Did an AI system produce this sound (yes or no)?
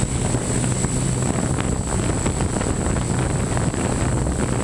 no